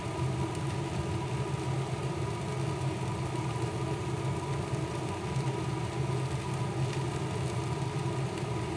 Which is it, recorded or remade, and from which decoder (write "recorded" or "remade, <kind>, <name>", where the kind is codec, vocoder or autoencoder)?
recorded